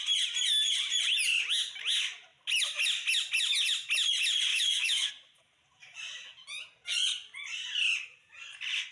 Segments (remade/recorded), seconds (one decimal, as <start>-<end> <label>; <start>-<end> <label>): 0.0-4.5 recorded; 4.5-5.1 remade; 5.1-8.9 recorded